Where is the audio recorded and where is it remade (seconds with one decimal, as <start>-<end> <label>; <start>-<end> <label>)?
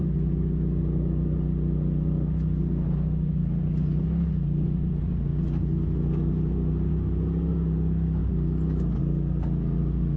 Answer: 0.0-10.2 recorded